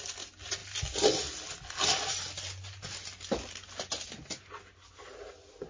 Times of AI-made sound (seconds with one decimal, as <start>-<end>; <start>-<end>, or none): none